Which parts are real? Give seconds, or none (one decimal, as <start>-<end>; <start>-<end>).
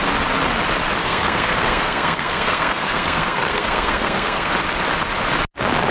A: 0.0-1.0; 4.5-5.9